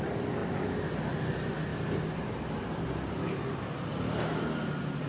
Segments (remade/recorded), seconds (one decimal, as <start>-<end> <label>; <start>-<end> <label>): 0.0-5.1 recorded